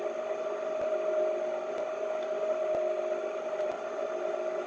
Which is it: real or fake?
real